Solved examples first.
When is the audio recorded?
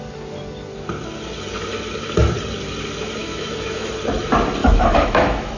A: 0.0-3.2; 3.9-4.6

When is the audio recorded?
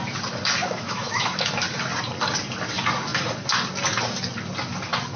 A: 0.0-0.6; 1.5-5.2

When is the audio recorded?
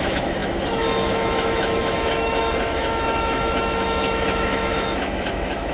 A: none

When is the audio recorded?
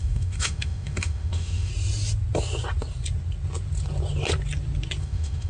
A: 1.7-5.0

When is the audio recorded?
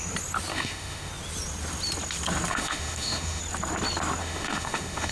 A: 0.0-0.5; 1.1-2.5; 3.4-4.2